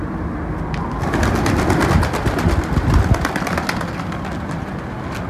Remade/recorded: recorded